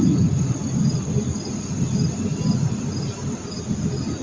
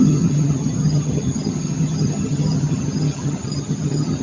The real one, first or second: first